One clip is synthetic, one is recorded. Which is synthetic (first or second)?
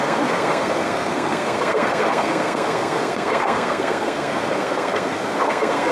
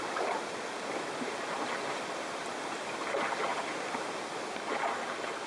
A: first